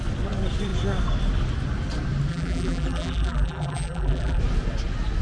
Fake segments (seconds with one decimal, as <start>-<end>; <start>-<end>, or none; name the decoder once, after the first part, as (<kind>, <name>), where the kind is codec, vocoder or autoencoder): 2.3-4.4 (vocoder, BigVGAN v2)